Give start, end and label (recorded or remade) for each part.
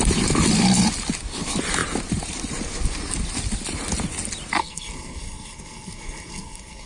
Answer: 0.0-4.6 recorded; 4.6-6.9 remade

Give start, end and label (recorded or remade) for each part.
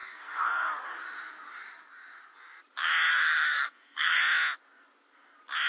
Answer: 0.0-0.7 remade; 0.7-3.1 recorded; 3.1-4.2 remade; 4.2-5.7 recorded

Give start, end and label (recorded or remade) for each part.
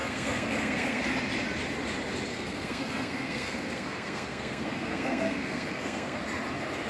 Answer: 0.0-1.0 remade; 1.0-2.3 recorded; 2.3-6.2 remade; 6.2-6.9 recorded